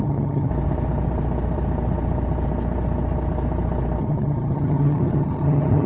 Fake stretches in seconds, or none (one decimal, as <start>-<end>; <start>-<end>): 0.0-0.5; 4.0-5.9